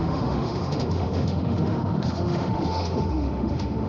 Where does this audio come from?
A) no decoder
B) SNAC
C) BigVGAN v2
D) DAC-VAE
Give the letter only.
D